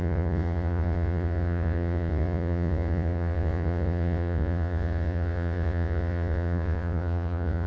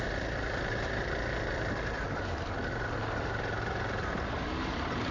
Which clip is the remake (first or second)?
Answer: first